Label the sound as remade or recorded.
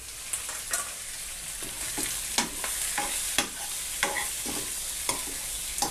recorded